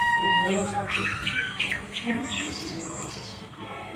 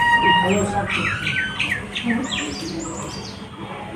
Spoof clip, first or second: first